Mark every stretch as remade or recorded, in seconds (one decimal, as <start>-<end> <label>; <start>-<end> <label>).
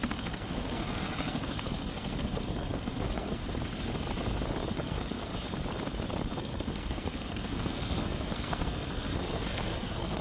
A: 0.0-3.4 remade; 3.4-4.7 recorded; 4.7-5.3 remade; 5.3-6.4 recorded; 6.4-10.2 remade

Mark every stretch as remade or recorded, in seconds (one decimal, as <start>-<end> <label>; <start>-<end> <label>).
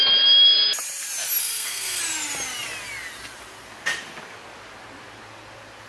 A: 0.0-1.4 recorded; 1.4-2.0 remade; 2.0-5.9 recorded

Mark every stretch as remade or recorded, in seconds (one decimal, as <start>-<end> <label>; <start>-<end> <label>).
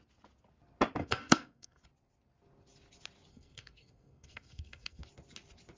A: 0.0-1.0 recorded; 1.0-1.8 remade; 1.8-3.3 recorded; 3.3-5.0 remade; 5.0-5.8 recorded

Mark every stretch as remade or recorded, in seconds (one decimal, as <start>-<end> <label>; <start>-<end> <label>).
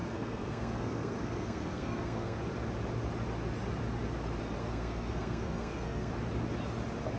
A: 0.0-2.4 remade; 2.4-4.6 recorded; 4.6-6.1 remade; 6.1-7.2 recorded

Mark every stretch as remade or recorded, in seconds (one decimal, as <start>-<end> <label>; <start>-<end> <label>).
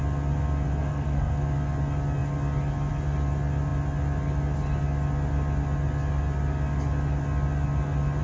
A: 0.0-0.8 recorded; 0.8-1.3 remade; 1.3-8.2 recorded